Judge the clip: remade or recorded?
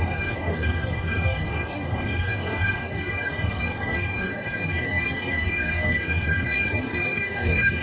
remade